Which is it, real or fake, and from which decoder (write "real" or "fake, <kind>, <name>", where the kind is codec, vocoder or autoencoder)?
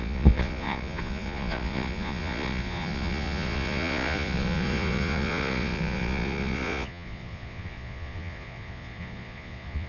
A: fake, vocoder, Vocos